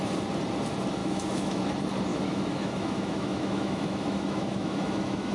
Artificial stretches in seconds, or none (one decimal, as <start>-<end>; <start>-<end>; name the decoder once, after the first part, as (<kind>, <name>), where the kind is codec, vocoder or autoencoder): 1.0-1.6 (autoencoder, DAC-VAE); 2.1-5.3